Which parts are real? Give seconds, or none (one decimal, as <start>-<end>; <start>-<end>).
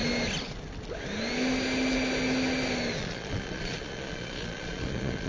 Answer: 0.0-3.0